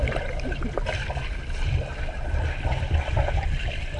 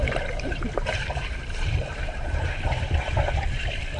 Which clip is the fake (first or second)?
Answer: second